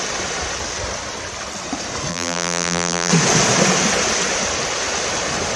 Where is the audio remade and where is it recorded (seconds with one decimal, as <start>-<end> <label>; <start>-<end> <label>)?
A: 0.0-2.1 recorded; 2.1-3.1 remade; 3.1-5.6 recorded